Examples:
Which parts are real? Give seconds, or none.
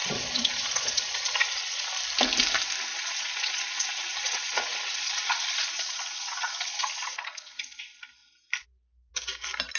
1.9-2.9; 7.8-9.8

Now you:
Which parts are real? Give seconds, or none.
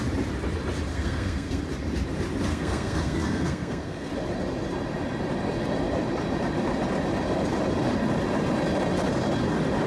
0.0-0.9; 1.6-2.5; 4.1-9.9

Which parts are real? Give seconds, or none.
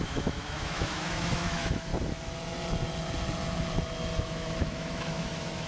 1.9-4.2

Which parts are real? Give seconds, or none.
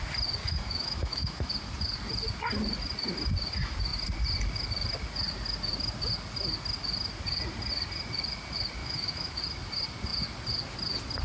0.0-0.4; 1.5-8.8; 9.4-11.2